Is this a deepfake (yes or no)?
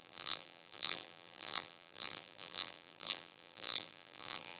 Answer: yes